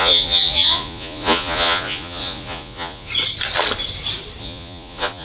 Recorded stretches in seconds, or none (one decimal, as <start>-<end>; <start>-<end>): 3.1-4.4